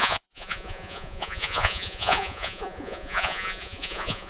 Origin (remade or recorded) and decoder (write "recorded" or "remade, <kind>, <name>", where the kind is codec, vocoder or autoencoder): remade, vocoder, Vocos